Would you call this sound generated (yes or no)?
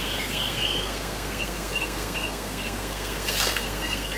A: yes